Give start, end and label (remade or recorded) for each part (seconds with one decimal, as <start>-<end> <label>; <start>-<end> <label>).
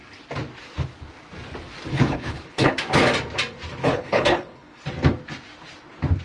0.0-1.9 recorded; 1.9-2.7 remade; 2.7-3.8 recorded; 3.8-4.8 remade; 4.8-6.2 recorded